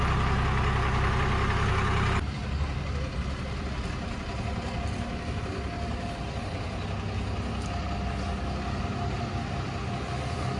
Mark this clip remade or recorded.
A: recorded